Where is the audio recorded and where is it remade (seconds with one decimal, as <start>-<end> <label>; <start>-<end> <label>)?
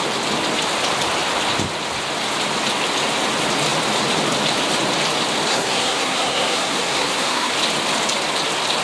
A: 0.0-5.5 recorded; 5.5-7.5 remade; 7.5-8.8 recorded